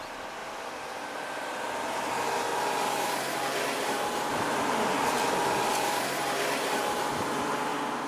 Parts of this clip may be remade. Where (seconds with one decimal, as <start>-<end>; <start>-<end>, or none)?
0.4-1.9; 2.5-7.0